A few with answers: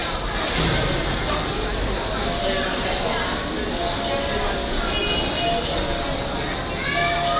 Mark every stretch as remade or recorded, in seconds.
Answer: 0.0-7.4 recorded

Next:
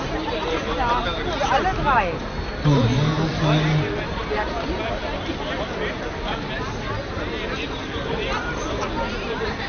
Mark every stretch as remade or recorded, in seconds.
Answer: 0.0-9.7 recorded